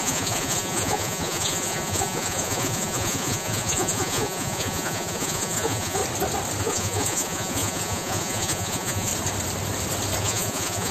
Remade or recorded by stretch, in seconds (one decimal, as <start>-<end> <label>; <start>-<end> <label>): 0.0-6.0 remade; 6.0-6.6 recorded; 6.6-9.1 remade; 9.1-10.2 recorded; 10.2-10.9 remade